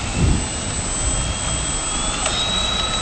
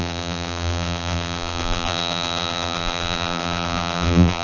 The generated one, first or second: second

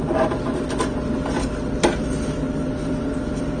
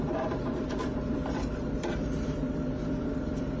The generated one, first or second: second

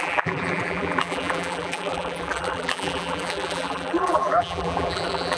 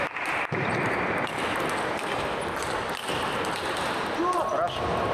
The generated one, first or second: first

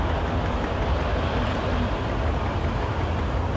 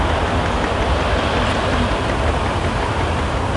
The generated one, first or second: second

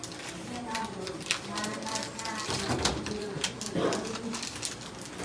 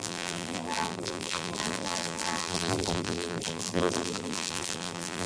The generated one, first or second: second